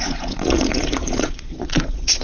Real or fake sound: fake